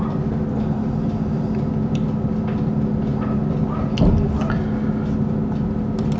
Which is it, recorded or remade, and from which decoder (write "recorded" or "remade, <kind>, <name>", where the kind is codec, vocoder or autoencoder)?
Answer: recorded